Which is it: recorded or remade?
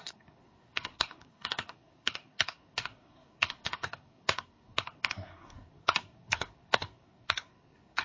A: remade